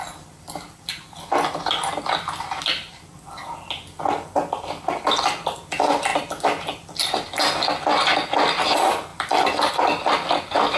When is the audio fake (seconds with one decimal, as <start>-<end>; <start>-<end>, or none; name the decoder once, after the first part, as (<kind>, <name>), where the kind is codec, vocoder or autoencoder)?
9.1-9.7 (vocoder, BigVGAN v2)